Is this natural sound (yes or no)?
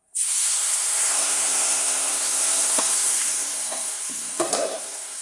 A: no